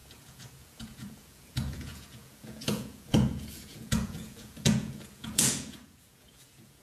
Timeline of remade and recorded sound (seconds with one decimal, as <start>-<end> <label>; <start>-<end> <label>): 0.0-6.8 remade